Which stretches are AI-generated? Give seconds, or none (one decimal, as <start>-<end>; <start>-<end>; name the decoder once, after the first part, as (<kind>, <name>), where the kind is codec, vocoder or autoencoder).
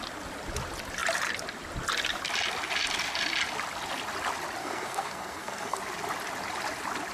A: 4.6-5.8 (codec, SNAC)